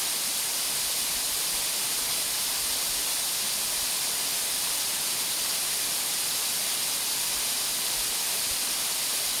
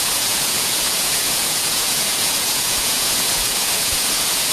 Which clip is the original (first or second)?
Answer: first